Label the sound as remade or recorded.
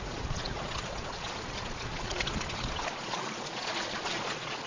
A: remade